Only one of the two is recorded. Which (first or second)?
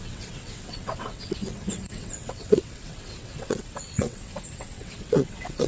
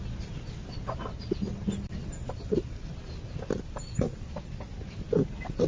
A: second